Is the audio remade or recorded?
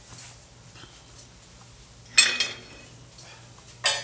recorded